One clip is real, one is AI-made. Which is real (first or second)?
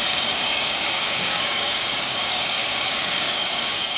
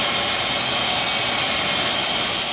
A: second